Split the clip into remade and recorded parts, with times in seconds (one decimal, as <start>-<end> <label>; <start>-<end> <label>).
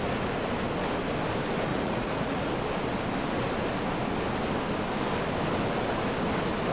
0.0-1.7 recorded; 1.7-2.5 remade; 2.5-6.7 recorded